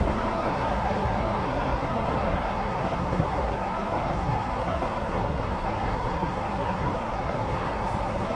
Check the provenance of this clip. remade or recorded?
remade